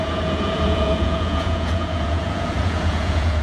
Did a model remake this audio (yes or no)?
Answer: yes